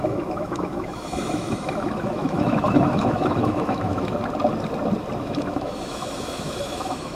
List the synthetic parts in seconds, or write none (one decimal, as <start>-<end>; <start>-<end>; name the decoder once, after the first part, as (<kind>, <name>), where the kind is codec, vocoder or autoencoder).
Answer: 0.0-4.2 (autoencoder, DAC-VAE); 5.2-7.1